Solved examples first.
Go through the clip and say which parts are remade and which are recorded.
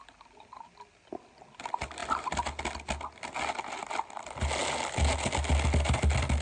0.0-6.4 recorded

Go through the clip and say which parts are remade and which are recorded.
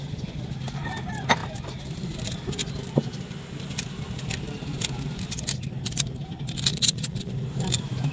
0.0-6.7 recorded; 6.7-7.3 remade; 7.3-8.1 recorded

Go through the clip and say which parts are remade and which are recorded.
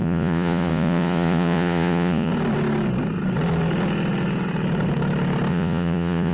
0.0-2.3 remade; 2.3-5.5 recorded; 5.5-6.3 remade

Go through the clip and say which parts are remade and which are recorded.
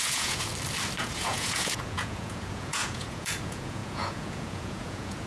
0.0-0.5 remade; 0.5-1.0 recorded; 1.0-5.3 remade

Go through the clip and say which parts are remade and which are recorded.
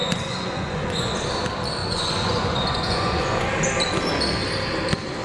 0.0-1.1 remade; 1.1-1.8 recorded; 1.8-3.5 remade; 3.5-5.2 recorded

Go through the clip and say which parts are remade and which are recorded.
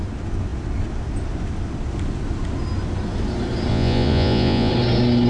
0.0-3.7 recorded; 3.7-4.7 remade; 4.7-5.3 recorded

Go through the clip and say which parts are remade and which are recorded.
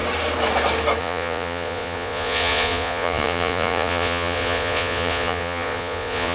0.0-1.0 recorded; 1.0-6.3 remade